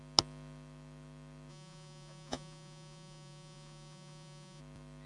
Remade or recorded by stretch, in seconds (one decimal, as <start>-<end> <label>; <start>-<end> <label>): 0.0-1.5 recorded; 1.5-4.6 remade; 4.6-5.1 recorded